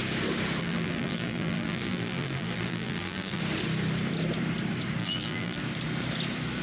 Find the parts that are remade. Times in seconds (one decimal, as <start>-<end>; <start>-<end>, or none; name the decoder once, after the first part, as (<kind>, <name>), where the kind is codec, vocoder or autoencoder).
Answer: 0.6-3.4 (vocoder, BigVGAN v2); 5.0-5.6